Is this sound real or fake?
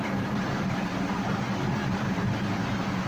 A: fake